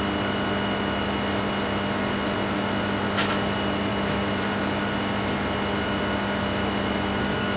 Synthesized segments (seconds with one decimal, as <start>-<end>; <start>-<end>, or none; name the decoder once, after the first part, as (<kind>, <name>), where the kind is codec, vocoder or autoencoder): none